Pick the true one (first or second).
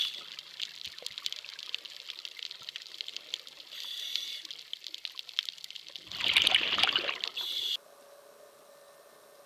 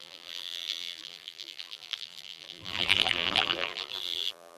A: first